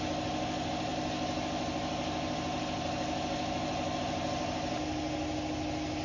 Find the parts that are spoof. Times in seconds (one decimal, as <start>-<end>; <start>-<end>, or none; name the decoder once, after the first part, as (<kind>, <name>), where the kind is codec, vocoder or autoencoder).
none